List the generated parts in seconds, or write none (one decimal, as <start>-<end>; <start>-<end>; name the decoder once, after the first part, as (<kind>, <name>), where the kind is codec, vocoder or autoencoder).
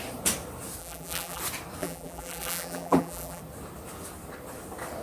0.8-1.4 (vocoder, BigVGAN v2); 1.8-3.4